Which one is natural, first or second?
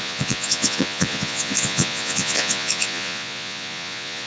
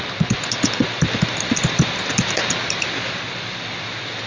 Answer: second